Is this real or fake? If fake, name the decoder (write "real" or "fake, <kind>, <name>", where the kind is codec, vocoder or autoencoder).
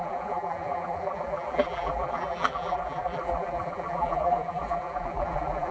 fake, vocoder, BigVGAN v2